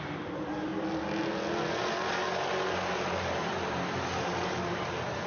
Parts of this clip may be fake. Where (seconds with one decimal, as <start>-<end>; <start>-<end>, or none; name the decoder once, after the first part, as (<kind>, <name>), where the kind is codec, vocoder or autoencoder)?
0.0-0.7 (vocoder, BigVGAN v2); 3.2-5.3